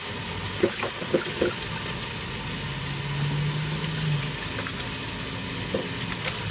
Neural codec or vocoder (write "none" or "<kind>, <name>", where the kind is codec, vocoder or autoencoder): none